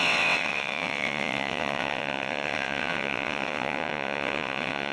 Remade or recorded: remade